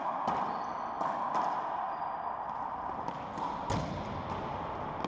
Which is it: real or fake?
real